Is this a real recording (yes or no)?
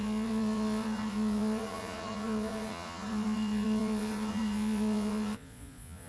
no